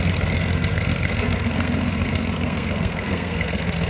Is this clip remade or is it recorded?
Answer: remade